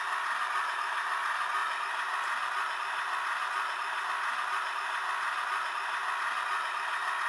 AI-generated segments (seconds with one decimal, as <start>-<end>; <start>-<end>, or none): none